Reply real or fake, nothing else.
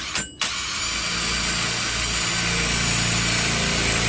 real